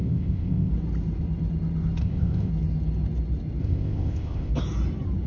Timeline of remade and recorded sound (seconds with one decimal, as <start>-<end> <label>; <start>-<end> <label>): 0.0-0.7 remade; 0.7-2.0 recorded; 2.0-2.5 remade; 2.5-3.6 recorded; 3.6-4.5 remade; 4.5-5.3 recorded